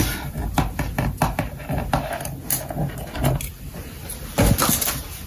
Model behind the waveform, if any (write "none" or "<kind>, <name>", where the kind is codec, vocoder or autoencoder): none